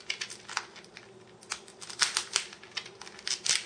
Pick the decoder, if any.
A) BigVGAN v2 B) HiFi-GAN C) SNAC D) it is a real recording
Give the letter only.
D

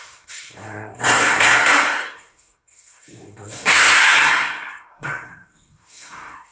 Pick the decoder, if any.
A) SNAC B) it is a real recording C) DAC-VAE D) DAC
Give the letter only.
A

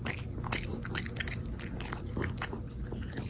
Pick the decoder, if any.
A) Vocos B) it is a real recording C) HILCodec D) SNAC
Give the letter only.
B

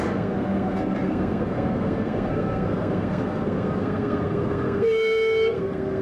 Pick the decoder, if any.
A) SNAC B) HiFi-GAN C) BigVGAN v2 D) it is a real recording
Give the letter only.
A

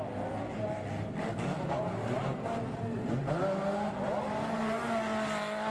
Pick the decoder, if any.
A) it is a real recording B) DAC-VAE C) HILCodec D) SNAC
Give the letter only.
A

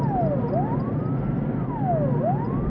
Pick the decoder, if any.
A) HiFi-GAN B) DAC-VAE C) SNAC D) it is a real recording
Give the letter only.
D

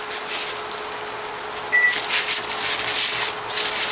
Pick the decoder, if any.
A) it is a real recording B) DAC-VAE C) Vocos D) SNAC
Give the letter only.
A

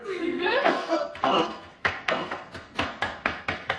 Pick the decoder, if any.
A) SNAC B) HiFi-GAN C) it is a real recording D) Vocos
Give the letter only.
A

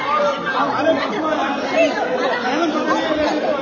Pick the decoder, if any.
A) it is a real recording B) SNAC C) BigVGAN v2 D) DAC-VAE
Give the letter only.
A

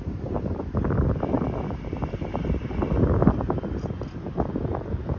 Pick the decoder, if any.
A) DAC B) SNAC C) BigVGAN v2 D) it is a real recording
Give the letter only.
D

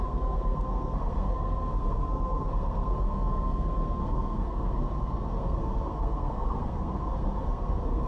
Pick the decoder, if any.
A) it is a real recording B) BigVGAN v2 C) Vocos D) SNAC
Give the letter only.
D